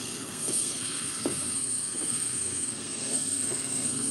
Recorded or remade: remade